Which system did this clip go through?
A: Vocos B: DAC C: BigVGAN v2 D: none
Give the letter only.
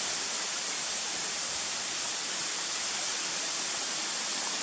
D